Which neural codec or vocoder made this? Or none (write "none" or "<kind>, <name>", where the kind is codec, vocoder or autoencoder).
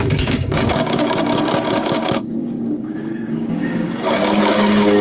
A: codec, DAC